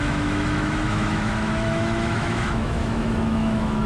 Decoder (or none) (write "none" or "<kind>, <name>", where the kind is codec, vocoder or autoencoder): autoencoder, DAC-VAE